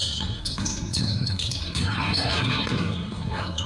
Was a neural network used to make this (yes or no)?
yes